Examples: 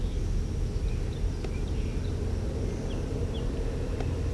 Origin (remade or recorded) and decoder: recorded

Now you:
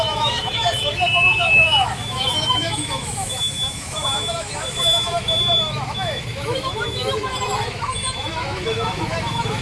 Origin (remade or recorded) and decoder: remade, autoencoder, DAC-VAE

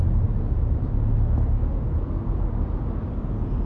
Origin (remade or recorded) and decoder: recorded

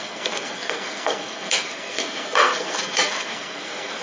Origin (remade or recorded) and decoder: remade, codec, SNAC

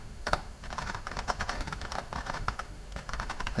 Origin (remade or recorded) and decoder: remade, autoencoder, DAC-VAE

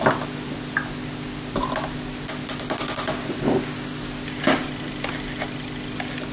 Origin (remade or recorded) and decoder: recorded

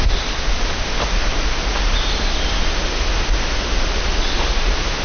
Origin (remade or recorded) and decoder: recorded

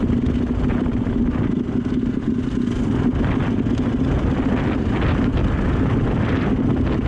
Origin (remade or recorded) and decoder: recorded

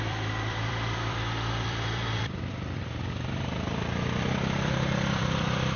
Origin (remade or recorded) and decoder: remade, vocoder, BigVGAN v2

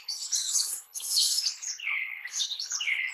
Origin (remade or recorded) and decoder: remade, codec, HILCodec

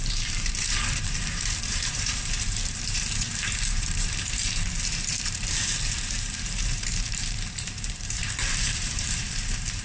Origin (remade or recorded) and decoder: remade, vocoder, BigVGAN v2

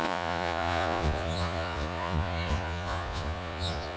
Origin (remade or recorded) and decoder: remade, vocoder, Vocos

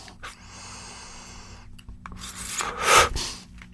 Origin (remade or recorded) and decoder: recorded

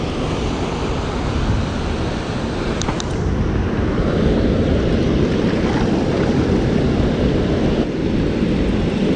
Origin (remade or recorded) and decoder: recorded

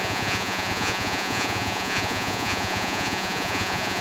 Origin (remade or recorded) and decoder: remade, vocoder, Vocos